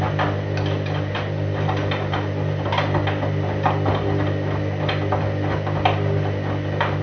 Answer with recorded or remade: recorded